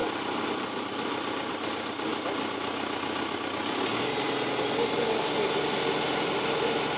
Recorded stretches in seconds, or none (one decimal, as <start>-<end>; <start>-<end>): 0.0-7.0